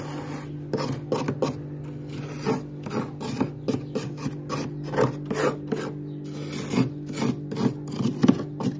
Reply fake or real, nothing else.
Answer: real